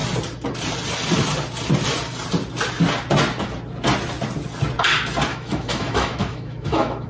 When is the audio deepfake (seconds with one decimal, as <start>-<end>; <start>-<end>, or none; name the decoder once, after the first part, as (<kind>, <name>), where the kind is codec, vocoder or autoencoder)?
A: 5.3-7.1 (autoencoder, DAC-VAE)